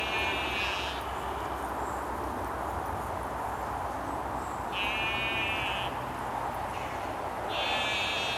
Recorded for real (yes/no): yes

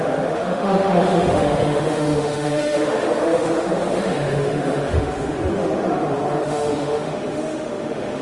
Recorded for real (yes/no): no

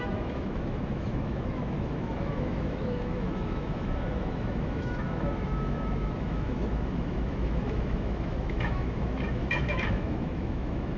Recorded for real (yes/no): no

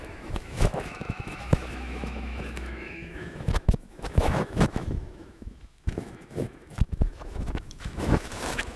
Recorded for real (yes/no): no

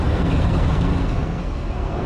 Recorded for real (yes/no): no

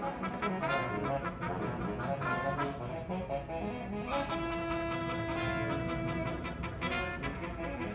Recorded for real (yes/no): yes